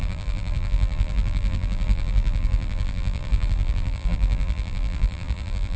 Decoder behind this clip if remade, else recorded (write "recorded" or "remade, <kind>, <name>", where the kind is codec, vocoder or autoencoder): remade, vocoder, BigVGAN v2